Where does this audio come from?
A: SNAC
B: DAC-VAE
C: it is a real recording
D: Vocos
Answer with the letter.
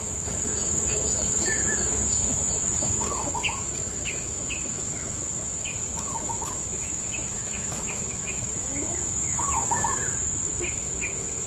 B